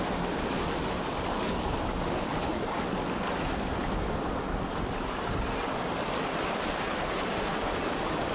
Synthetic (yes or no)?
no